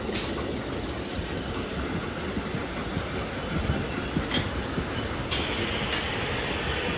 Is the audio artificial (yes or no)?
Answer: no